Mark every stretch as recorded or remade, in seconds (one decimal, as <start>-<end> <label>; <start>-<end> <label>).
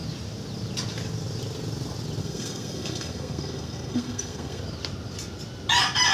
0.0-2.2 recorded; 2.2-4.6 remade; 4.6-6.1 recorded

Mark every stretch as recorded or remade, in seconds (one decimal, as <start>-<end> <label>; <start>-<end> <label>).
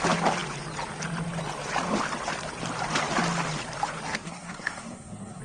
0.0-4.1 recorded; 4.1-5.4 remade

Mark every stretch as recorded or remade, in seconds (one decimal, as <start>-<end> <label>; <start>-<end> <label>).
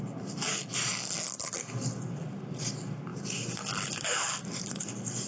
0.0-5.3 recorded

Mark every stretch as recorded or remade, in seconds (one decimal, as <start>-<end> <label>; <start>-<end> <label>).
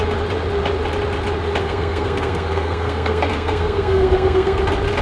0.0-1.6 recorded; 1.6-4.6 remade; 4.6-5.0 recorded